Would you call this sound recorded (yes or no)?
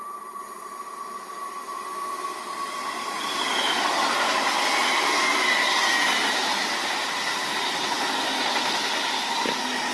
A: yes